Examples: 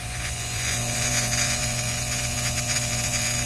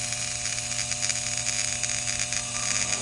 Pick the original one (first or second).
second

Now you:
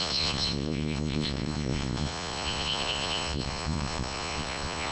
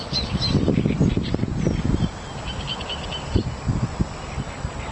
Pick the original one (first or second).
second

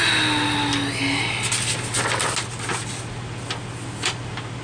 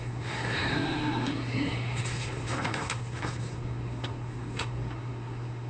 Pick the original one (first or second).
first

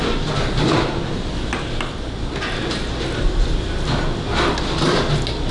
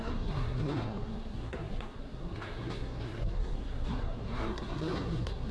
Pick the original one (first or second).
first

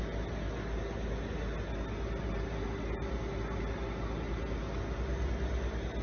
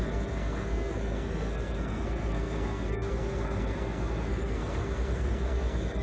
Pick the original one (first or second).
first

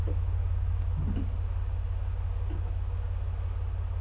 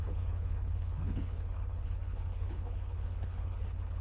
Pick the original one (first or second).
first